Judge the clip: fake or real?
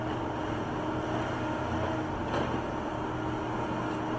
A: real